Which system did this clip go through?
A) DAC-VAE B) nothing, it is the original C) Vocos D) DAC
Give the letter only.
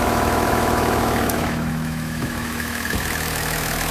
A